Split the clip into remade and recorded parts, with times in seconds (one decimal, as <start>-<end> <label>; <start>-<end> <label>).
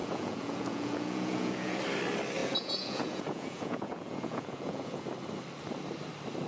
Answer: 0.0-1.8 remade; 1.8-2.4 recorded; 2.4-5.0 remade; 5.0-6.5 recorded